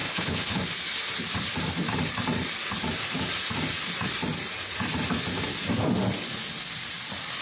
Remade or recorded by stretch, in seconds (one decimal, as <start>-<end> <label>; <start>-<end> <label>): 0.0-0.6 remade; 0.6-7.4 recorded